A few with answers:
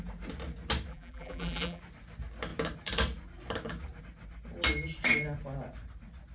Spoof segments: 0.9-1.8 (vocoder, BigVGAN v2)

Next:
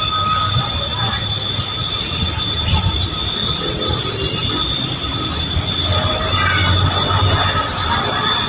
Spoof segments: 4.4-6.3 (vocoder, BigVGAN v2)